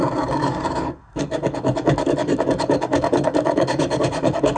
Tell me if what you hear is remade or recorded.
remade